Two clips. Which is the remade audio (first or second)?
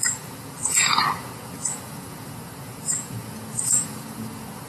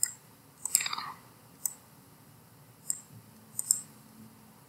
first